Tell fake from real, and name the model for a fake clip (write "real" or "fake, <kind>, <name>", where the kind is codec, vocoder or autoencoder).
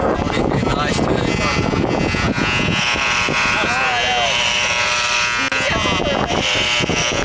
real